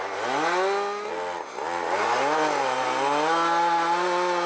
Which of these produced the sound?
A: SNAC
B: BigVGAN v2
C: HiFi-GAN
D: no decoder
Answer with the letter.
D